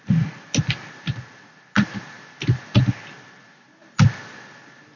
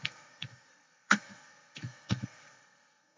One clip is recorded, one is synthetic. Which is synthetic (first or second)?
second